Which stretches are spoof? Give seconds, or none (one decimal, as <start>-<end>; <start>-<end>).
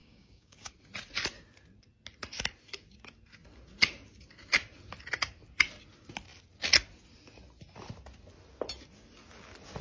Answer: 0.0-0.7